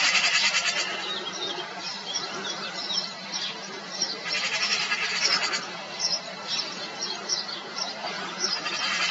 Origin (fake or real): fake